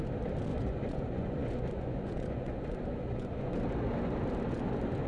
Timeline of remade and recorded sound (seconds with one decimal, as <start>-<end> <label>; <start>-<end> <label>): 0.0-0.5 recorded; 0.5-3.6 remade; 3.6-5.1 recorded